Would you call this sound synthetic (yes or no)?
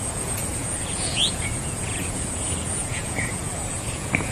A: yes